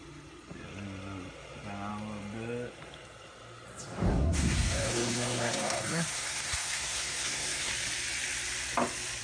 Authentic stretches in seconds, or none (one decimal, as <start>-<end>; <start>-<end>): 0.0-4.1; 7.7-9.2